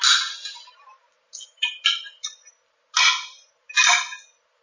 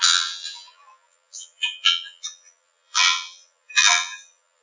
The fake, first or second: second